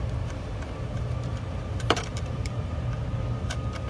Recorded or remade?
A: remade